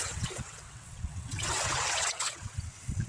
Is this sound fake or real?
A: fake